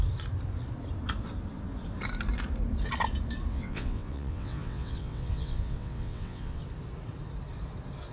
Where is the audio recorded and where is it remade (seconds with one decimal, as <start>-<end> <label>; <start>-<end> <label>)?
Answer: 0.0-3.5 recorded; 3.5-6.6 remade; 6.6-8.1 recorded